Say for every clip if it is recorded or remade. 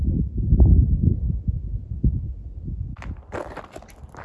recorded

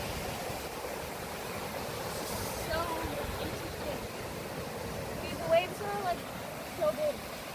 recorded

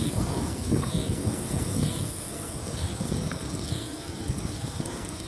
remade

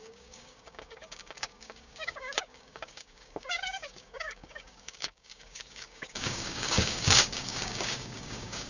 remade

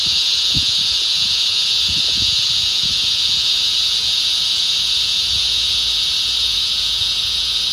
remade